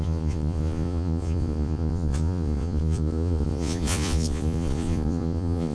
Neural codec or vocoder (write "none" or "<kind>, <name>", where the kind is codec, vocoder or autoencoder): vocoder, Vocos